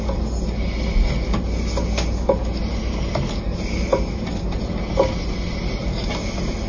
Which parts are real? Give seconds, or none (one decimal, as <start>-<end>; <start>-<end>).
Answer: 0.0-6.7